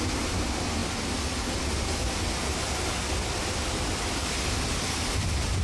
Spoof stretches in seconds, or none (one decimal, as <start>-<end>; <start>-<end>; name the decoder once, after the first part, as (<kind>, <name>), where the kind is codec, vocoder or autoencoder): none

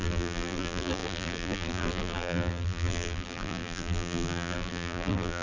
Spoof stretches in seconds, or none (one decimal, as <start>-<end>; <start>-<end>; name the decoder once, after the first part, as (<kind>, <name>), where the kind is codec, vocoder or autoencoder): 0.0-5.4 (vocoder, BigVGAN v2)

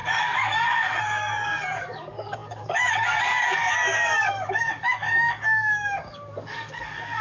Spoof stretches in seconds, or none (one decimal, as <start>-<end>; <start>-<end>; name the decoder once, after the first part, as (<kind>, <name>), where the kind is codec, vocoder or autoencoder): 0.0-7.2 (codec, DAC)

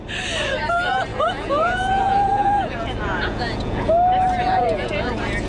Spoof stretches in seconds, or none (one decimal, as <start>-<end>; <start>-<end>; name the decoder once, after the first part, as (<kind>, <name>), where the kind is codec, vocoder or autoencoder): 1.1-3.9 (vocoder, Vocos); 4.4-5.1

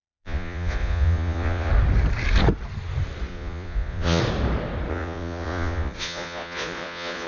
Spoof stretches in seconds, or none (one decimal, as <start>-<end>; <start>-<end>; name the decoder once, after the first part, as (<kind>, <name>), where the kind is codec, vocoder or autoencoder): 0.0-1.7 (vocoder, Vocos); 3.3-4.2; 4.9-7.3

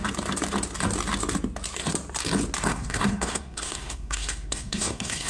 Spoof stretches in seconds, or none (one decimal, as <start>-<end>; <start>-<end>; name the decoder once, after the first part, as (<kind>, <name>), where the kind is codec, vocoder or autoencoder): 2.7-5.3 (codec, SNAC)

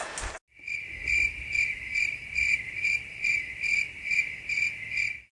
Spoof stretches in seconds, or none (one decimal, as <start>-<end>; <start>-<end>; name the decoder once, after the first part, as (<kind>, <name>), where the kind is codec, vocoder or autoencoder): 1.0-4.2 (vocoder, BigVGAN v2)